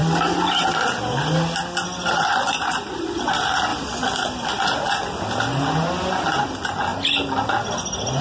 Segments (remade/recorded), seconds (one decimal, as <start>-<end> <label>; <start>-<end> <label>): 0.0-8.2 recorded